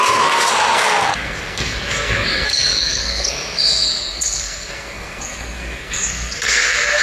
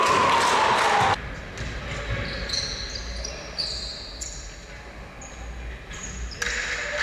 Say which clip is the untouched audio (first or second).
second